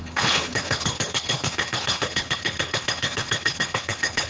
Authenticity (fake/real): fake